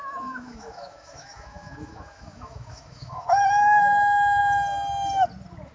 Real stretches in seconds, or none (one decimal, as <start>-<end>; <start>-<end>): 3.4-5.7